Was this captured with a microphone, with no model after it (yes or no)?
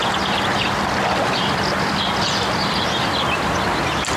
yes